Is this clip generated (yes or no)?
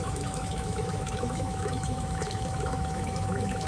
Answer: yes